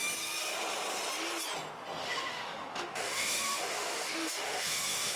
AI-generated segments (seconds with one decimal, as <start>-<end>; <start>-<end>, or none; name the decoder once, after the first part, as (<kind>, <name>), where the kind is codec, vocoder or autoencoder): 2.0-5.2 (autoencoder, DAC-VAE)